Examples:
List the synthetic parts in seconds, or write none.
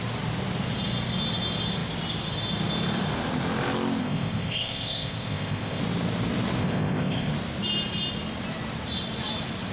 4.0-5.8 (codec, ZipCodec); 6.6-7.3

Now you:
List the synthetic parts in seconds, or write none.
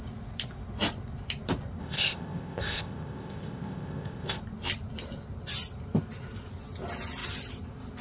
1.8-4.4 (codec, ZipCodec)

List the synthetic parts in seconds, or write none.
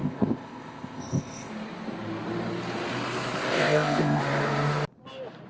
0.0-1.5 (codec, ZipCodec); 3.5-4.2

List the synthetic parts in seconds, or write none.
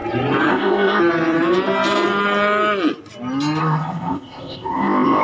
0.5-1.0 (codec, ZipCodec); 3.6-5.2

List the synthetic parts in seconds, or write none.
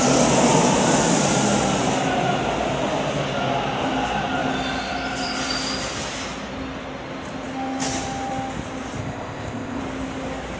9.0-9.8 (codec, ZipCodec)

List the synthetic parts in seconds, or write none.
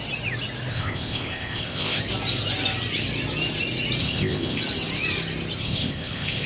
0.7-2.0 (codec, ZipCodec); 4.0-4.6; 5.6-6.5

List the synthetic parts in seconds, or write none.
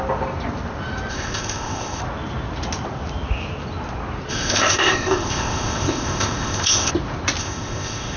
1.1-2.0 (codec, ZipCodec); 4.3-6.9; 7.4-8.2